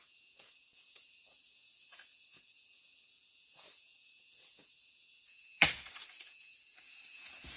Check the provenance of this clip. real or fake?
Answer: fake